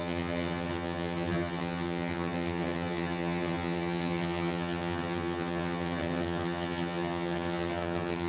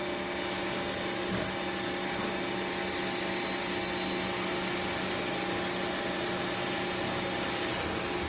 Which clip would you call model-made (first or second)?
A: first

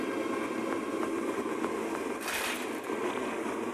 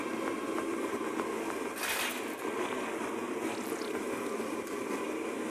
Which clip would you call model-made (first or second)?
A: first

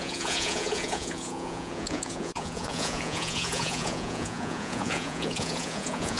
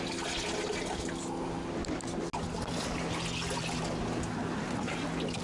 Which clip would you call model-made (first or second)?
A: first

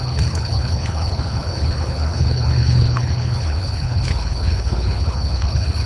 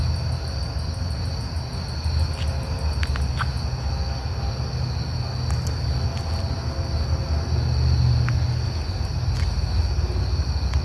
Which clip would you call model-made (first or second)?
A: first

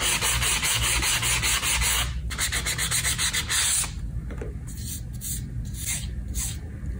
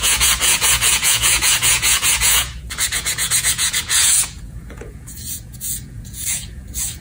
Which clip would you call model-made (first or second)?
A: second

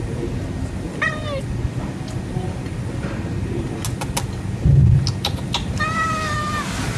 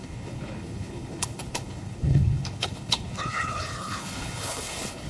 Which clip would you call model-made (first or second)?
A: second